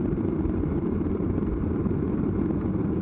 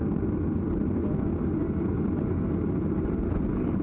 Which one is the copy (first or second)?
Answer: first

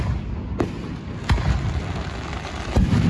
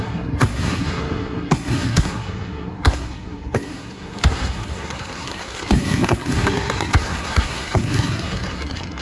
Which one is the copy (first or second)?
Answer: second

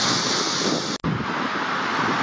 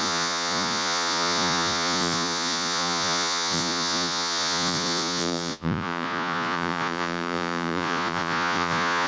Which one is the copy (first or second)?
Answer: second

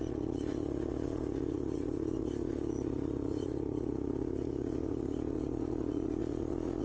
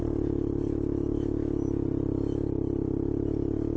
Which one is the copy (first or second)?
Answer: first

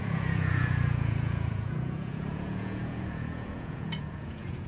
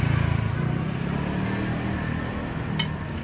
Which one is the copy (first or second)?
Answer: first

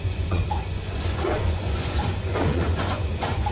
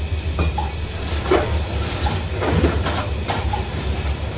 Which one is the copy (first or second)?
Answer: first